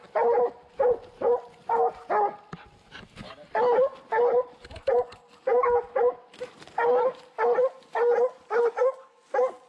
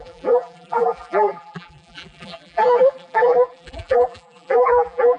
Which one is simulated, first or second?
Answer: second